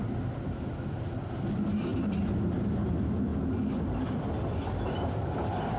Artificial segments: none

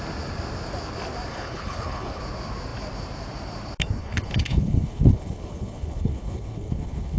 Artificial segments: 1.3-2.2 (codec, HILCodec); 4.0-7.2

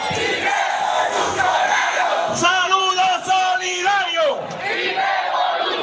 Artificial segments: 0.7-2.8 (codec, SNAC)